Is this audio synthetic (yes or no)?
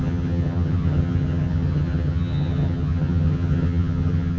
yes